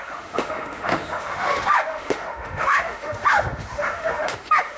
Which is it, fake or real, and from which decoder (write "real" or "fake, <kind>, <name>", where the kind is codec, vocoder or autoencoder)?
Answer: fake, autoencoder, DAC-VAE